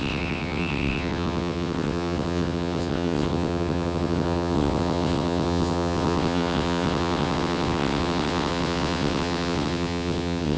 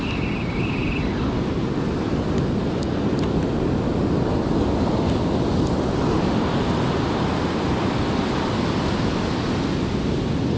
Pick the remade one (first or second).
first